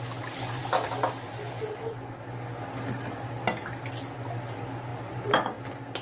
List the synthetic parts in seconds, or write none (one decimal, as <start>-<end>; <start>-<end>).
4.9-6.0